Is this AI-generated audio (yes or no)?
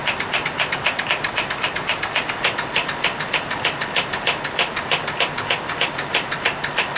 no